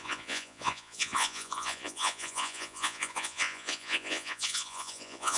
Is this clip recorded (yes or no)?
no